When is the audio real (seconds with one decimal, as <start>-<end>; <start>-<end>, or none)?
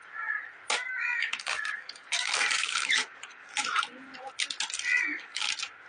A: 0.0-1.1; 3.6-5.0; 5.5-5.9